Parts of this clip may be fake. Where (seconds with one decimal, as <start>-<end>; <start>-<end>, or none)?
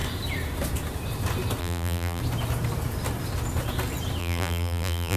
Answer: 1.6-2.2; 4.2-5.2